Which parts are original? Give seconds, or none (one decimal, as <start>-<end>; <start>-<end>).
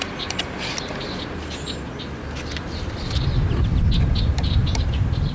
0.0-5.3